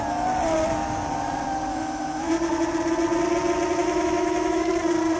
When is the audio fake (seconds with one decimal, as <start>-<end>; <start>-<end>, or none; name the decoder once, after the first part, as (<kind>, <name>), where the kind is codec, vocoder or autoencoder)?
1.7-2.3 (autoencoder, DAC-VAE); 3.8-4.7